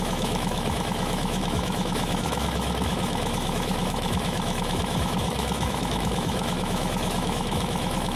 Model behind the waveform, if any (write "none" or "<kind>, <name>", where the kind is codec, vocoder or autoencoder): autoencoder, DAC-VAE